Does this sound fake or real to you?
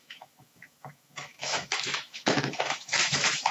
fake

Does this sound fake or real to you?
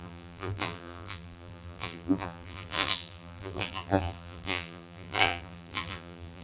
fake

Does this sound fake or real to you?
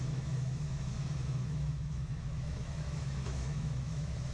fake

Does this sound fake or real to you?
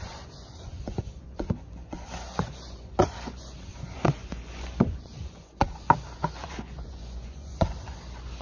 fake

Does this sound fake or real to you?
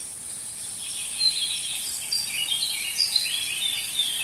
real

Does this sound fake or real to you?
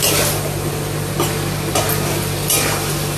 real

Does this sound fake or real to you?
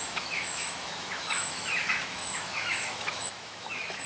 fake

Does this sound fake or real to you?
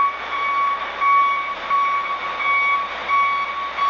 real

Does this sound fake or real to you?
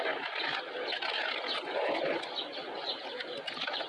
real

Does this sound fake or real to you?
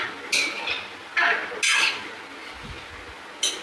real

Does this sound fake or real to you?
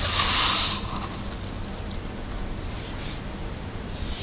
real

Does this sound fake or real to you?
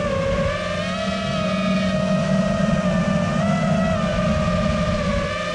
real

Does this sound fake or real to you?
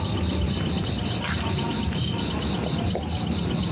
real